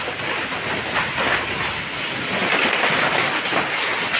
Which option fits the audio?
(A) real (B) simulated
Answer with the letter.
A